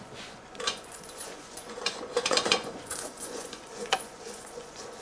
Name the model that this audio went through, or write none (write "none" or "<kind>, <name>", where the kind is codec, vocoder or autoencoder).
vocoder, Vocos